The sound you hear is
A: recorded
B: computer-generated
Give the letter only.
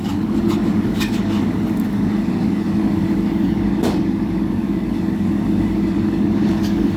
B